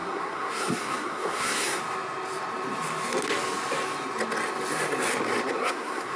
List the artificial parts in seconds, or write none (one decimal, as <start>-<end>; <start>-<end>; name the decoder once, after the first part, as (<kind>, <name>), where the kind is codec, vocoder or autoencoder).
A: 0.0-1.8 (codec, SNAC); 5.5-6.2